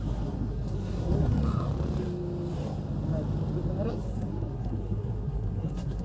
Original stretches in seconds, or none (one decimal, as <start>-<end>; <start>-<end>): 1.7-3.9